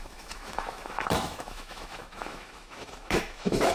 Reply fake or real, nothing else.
fake